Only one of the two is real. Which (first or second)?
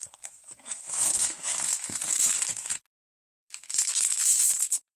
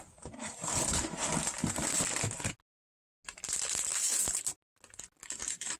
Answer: second